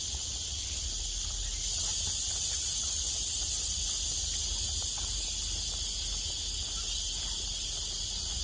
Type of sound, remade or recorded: recorded